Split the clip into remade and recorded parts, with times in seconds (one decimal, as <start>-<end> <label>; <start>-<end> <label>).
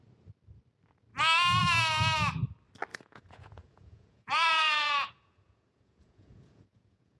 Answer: 0.0-2.9 recorded; 2.9-7.2 remade